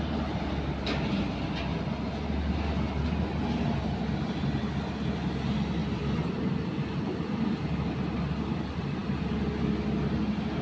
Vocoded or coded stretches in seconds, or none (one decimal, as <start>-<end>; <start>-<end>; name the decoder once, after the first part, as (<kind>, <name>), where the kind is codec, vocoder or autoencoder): 5.8-6.5 (vocoder, BigVGAN v2)